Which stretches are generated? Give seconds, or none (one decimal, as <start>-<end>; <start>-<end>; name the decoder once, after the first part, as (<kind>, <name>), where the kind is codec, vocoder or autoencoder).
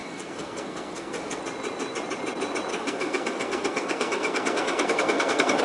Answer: 0.0-1.4 (codec, SNAC); 2.7-5.6